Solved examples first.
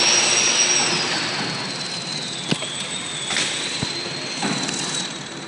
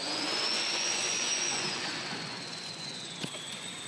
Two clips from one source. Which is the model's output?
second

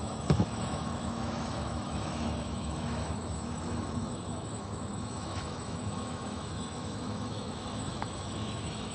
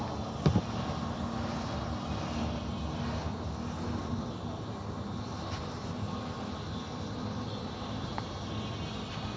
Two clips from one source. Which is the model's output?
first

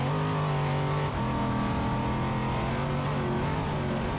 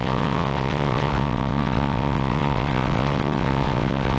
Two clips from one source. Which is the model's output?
second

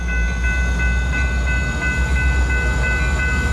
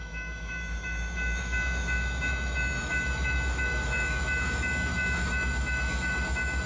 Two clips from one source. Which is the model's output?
second